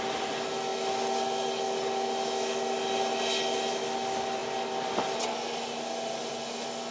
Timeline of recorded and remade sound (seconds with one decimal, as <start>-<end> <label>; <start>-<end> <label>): 0.0-6.9 recorded